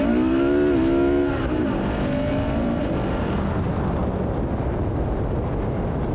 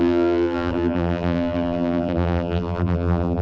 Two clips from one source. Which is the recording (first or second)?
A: first